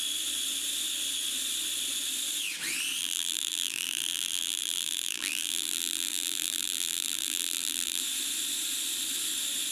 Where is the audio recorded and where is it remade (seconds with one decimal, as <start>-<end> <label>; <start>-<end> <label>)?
0.0-3.0 recorded; 3.0-8.0 remade; 8.0-9.7 recorded